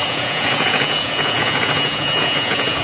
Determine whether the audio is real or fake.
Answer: fake